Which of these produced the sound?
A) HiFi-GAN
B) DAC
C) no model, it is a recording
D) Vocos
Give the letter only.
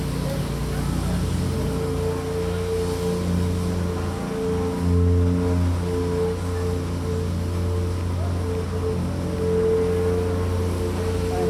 C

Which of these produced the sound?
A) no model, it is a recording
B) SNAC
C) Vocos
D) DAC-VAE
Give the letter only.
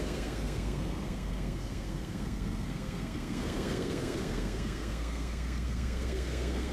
B